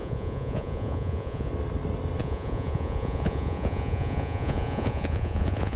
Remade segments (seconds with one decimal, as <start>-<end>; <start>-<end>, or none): 0.0-1.5; 2.2-5.8